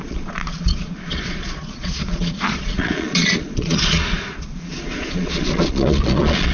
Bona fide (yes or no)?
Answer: no